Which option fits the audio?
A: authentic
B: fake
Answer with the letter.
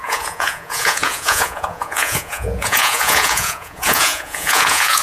B